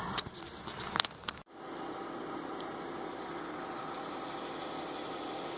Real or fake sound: real